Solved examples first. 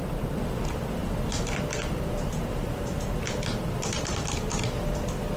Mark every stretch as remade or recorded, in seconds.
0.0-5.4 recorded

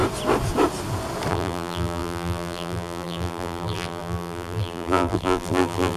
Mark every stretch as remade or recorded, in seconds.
0.0-1.3 recorded; 1.3-6.0 remade

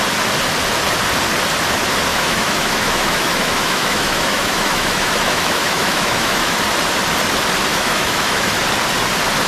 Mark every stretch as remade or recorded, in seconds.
0.0-2.1 recorded; 2.1-6.6 remade; 6.6-7.7 recorded; 7.7-8.5 remade; 8.5-9.5 recorded

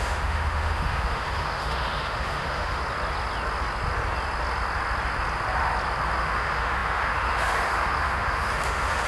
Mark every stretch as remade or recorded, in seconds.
0.0-2.8 remade; 2.8-6.2 recorded; 6.2-9.1 remade

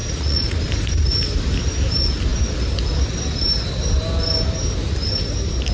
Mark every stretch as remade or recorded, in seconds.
0.0-0.6 remade; 0.6-5.7 recorded

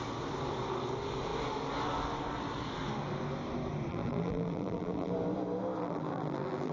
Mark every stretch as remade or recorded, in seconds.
0.0-3.9 recorded; 3.9-5.1 remade; 5.1-5.8 recorded; 5.8-6.7 remade